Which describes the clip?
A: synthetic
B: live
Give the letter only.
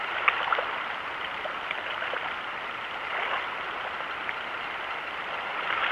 B